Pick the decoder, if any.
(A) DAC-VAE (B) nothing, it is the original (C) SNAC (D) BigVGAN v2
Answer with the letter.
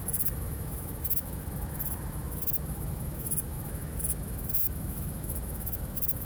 A